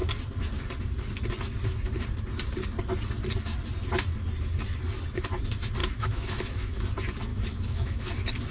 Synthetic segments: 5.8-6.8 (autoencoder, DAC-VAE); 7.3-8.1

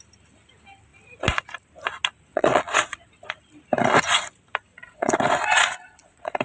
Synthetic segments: 2.3-3.1 (vocoder, Vocos); 4.7-6.4

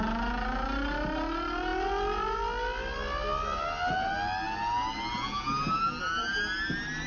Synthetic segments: none